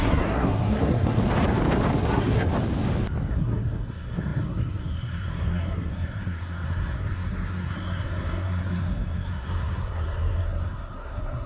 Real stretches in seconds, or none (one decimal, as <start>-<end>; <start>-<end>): 1.2-2.0; 2.5-3.3